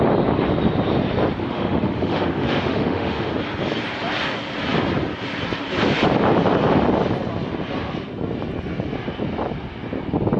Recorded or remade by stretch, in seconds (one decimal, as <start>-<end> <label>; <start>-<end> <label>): 0.0-1.4 recorded; 1.4-3.3 remade; 3.3-10.4 recorded